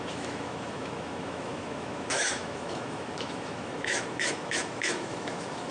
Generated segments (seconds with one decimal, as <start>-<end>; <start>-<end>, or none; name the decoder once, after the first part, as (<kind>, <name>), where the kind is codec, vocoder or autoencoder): 0.0-5.7 (autoencoder, DAC-VAE)